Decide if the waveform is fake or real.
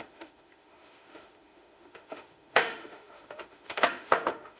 fake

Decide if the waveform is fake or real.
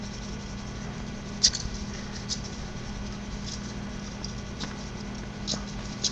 real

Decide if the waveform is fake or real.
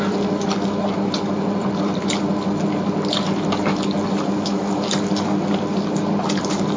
real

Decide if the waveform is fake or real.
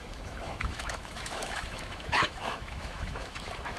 fake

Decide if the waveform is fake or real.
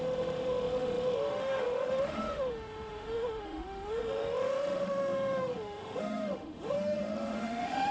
fake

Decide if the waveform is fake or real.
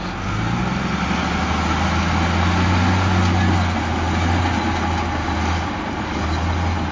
real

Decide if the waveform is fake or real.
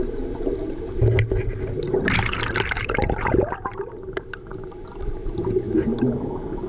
real